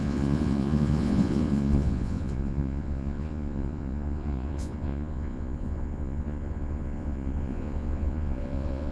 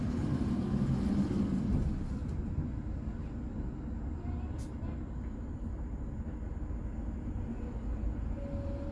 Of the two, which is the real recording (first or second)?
second